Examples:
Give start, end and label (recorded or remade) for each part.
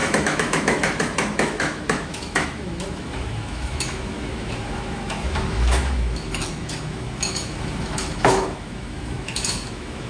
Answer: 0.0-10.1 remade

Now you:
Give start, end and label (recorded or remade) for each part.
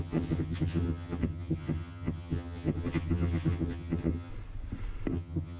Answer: 0.0-4.3 remade; 4.3-5.1 recorded; 5.1-5.6 remade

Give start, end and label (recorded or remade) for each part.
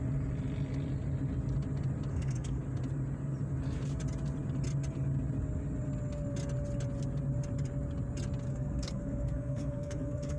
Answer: 0.0-2.1 recorded; 2.1-2.6 remade; 2.6-8.5 recorded; 8.5-10.4 remade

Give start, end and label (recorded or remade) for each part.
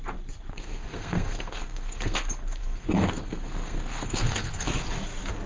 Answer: 0.0-0.5 recorded; 0.5-2.2 remade; 2.2-2.6 recorded; 2.6-4.7 remade; 4.7-5.5 recorded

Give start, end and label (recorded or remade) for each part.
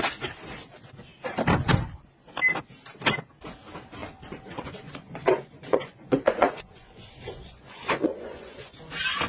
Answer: 0.0-4.0 recorded; 4.0-8.8 remade; 8.8-9.3 recorded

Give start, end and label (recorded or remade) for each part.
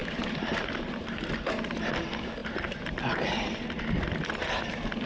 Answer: 0.0-1.3 remade; 1.3-5.1 recorded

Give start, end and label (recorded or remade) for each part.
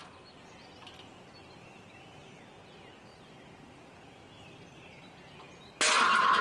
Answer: 0.0-6.4 recorded